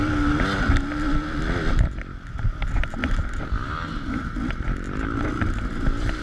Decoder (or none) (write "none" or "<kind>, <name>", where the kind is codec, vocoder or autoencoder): none